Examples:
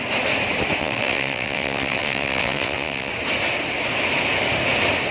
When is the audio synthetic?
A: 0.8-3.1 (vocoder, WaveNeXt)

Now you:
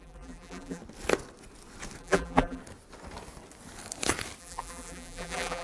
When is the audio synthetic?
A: 0.0-0.8 (vocoder, BigVGAN v2); 2.0-2.6; 4.4-5.6

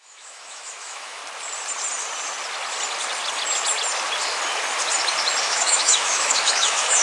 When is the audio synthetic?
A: 0.0-1.2 (autoencoder, DAC-VAE); 5.4-7.0

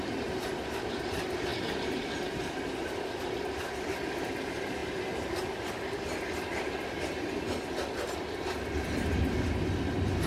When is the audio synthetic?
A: none

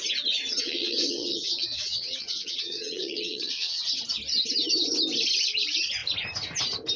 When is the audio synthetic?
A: 0.6-4.0 (vocoder, WaveNeXt)